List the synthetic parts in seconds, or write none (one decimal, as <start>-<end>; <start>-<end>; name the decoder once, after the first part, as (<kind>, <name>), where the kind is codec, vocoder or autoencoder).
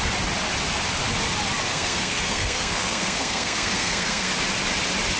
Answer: 1.7-4.3 (codec, SNAC)